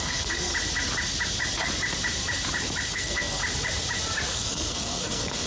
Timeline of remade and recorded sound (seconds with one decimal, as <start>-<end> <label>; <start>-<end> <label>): 0.0-0.5 remade; 0.5-2.9 recorded; 2.9-3.4 remade; 3.4-4.3 recorded; 4.3-5.5 remade